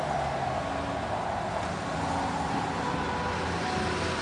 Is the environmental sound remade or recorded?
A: recorded